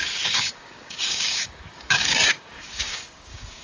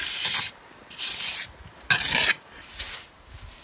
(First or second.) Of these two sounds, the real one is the second